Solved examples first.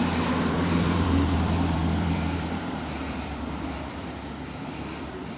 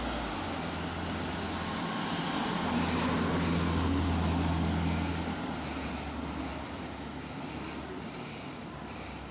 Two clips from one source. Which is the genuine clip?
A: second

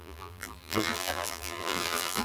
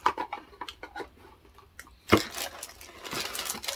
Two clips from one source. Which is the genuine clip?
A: second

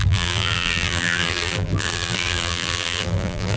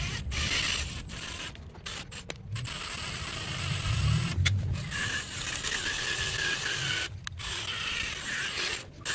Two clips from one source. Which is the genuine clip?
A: second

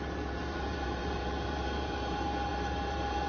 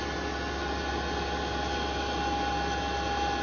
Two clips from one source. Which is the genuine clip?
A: second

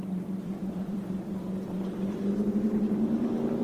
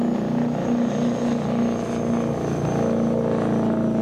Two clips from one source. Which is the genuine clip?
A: second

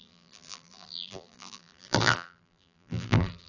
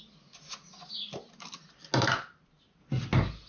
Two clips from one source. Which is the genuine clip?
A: second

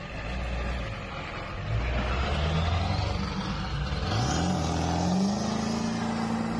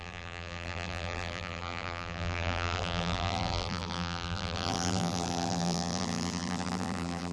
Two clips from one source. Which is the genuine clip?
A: first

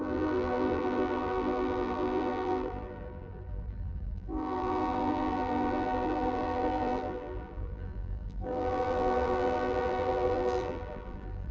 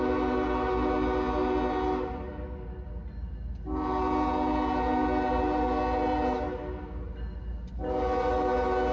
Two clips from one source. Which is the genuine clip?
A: second